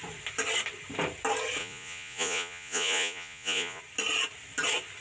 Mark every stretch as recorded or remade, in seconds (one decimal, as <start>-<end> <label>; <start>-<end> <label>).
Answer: 0.0-1.6 recorded; 1.6-3.8 remade; 3.8-5.0 recorded